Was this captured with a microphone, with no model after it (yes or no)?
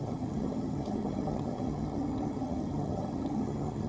no